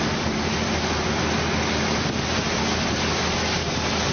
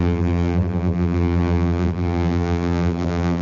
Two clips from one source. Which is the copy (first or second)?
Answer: second